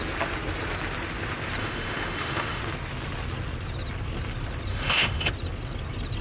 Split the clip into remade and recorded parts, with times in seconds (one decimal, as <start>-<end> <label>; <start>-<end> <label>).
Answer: 0.0-1.6 recorded; 1.6-2.6 remade; 2.6-4.7 recorded; 4.7-5.3 remade; 5.3-6.2 recorded